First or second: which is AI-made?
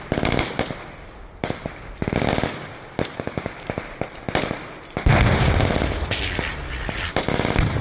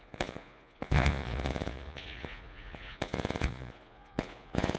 second